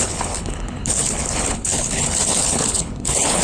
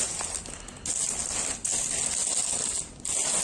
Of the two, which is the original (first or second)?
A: second